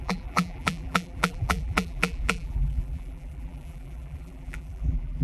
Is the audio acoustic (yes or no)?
no